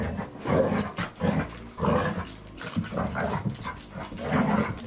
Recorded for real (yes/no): yes